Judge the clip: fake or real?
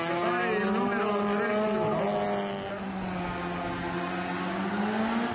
real